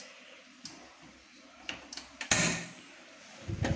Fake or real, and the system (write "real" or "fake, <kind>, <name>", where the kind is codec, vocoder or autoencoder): real